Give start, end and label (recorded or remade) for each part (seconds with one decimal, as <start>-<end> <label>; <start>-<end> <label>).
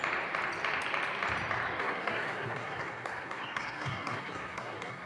0.0-1.8 recorded; 1.8-5.1 remade